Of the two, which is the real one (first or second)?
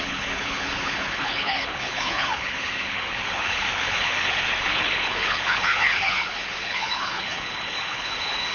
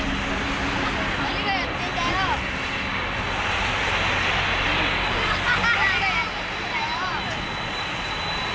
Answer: second